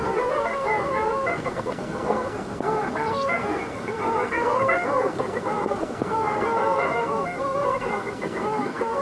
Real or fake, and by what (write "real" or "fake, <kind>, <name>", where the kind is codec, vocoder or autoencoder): fake, codec, SNAC